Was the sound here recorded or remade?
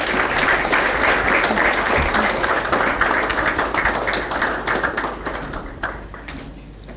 recorded